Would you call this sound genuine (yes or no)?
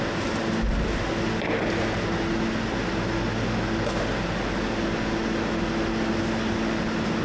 yes